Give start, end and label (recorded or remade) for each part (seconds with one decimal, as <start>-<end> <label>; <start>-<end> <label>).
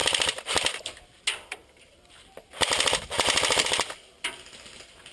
0.0-0.8 remade; 0.8-1.6 recorded; 1.6-4.1 remade; 4.1-5.1 recorded